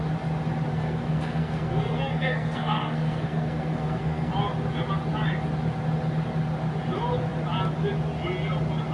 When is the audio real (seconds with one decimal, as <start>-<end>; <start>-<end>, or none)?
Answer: 0.0-0.7; 4.3-8.9